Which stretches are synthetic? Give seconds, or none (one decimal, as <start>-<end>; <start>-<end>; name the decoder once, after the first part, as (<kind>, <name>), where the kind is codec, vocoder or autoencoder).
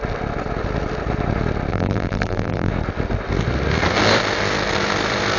1.7-2.7 (vocoder, BigVGAN v2)